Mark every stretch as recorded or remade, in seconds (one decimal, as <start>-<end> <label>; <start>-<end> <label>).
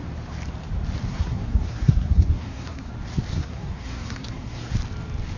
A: 0.0-1.1 recorded; 1.1-2.9 remade; 2.9-3.3 recorded; 3.3-4.7 remade; 4.7-5.4 recorded